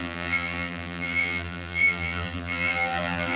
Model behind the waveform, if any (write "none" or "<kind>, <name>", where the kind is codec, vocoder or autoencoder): vocoder, BigVGAN v2